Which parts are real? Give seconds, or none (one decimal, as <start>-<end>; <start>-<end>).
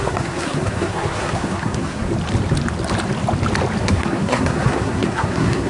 2.1-3.8